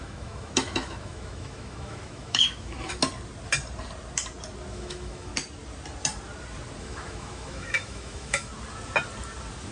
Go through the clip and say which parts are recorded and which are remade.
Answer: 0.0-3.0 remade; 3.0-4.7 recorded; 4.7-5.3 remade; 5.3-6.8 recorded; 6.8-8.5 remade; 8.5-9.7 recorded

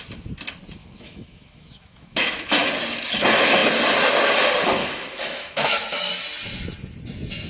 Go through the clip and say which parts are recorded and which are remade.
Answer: 0.0-0.8 recorded; 0.8-2.5 remade; 2.5-4.8 recorded; 4.8-6.1 remade; 6.1-7.5 recorded

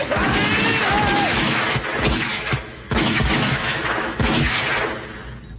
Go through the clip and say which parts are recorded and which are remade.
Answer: 0.0-1.3 recorded; 1.3-1.8 remade; 1.8-2.3 recorded; 2.3-4.6 remade; 4.6-5.6 recorded

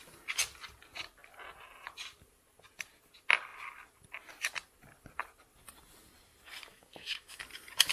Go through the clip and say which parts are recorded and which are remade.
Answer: 0.0-6.7 recorded; 6.7-7.4 remade; 7.4-7.9 recorded

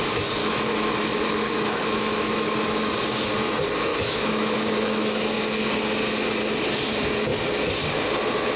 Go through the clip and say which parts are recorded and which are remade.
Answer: 0.0-0.4 recorded; 0.4-2.9 remade; 2.9-3.9 recorded; 3.9-5.3 remade; 5.3-8.6 recorded